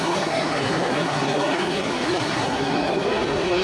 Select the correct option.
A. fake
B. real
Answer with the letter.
A